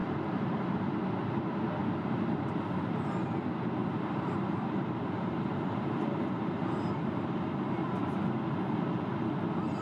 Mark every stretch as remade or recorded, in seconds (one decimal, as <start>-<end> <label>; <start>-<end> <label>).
0.0-0.7 remade; 0.7-1.8 recorded; 1.8-2.9 remade; 2.9-3.8 recorded; 3.8-8.4 remade; 8.4-9.8 recorded